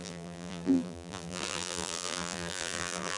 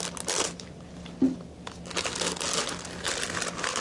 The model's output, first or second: first